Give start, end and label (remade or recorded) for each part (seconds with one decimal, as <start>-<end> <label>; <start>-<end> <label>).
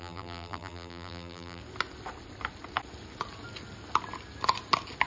0.0-1.6 remade; 1.6-5.1 recorded